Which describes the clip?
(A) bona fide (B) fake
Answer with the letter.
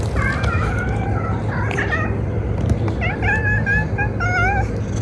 A